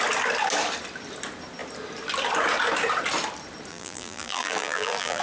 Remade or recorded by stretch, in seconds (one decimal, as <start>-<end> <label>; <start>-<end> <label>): 0.0-3.7 recorded; 3.7-5.2 remade